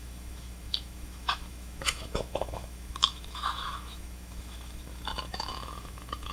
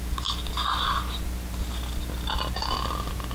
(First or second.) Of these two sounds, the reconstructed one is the first